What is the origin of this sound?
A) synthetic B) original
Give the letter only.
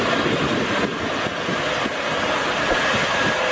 B